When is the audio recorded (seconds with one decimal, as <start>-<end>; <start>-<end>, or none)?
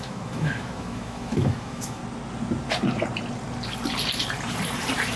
2.0-5.2